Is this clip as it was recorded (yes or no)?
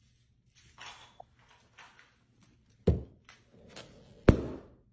yes